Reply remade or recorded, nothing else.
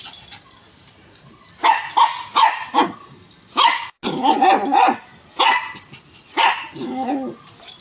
recorded